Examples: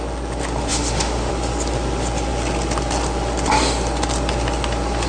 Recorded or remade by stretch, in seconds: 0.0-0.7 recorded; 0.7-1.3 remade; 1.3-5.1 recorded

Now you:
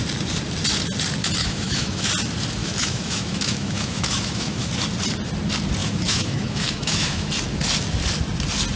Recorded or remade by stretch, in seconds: 0.0-1.4 recorded; 1.4-2.1 remade; 2.1-2.6 recorded; 2.6-4.7 remade; 4.7-5.8 recorded; 5.8-7.3 remade; 7.3-8.8 recorded

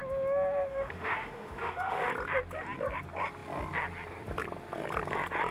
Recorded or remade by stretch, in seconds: 0.0-0.7 recorded; 0.7-2.1 remade; 2.1-5.5 recorded